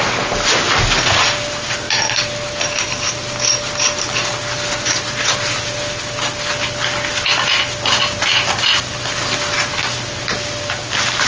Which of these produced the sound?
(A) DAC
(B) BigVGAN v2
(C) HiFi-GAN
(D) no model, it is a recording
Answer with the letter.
D